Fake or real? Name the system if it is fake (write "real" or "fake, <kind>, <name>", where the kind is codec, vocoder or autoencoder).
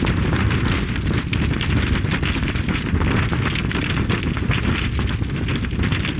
real